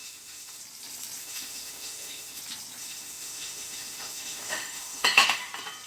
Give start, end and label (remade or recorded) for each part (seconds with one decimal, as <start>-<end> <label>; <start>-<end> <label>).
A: 0.0-0.6 remade; 0.6-1.2 recorded; 1.2-2.4 remade; 2.4-2.8 recorded; 2.8-5.5 remade; 5.5-5.9 recorded